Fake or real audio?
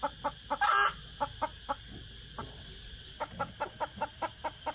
real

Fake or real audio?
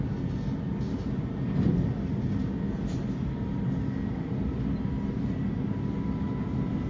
real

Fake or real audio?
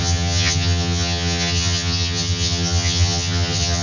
fake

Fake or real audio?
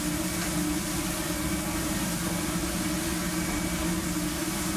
real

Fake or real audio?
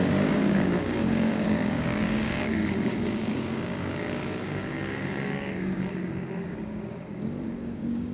fake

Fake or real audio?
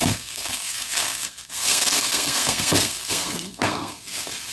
fake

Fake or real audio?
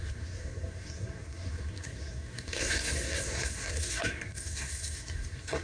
fake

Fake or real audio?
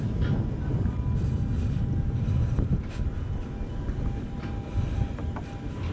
real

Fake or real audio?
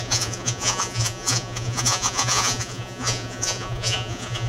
fake